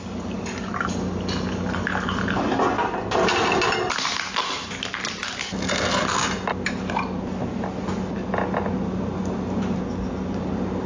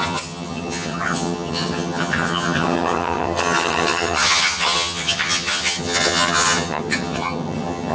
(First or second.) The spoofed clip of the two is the second